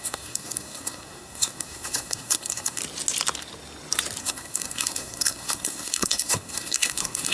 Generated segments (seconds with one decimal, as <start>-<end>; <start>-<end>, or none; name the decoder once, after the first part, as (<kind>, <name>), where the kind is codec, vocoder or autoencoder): 0.0-2.8 (codec, SNAC); 4.2-7.3